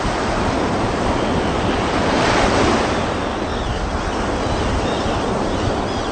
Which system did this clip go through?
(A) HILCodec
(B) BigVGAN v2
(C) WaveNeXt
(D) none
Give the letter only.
D